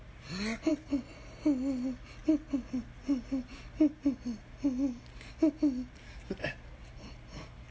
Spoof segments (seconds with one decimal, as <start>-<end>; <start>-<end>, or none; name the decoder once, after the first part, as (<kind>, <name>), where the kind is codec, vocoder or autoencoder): none